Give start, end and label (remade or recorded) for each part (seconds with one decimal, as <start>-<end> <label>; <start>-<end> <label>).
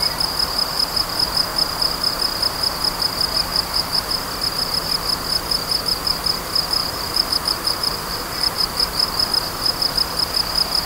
0.0-3.5 recorded; 3.5-4.0 remade; 4.0-6.8 recorded; 6.8-9.3 remade; 9.3-10.9 recorded